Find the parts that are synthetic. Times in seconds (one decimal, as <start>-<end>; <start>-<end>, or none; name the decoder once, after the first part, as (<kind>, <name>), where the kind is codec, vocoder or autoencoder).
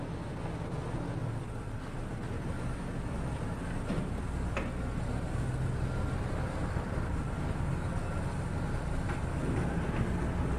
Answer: 1.2-3.7 (vocoder, BigVGAN v2); 6.6-7.7